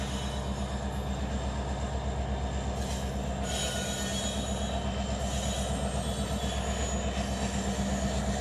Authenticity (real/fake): real